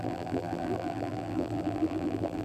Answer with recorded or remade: remade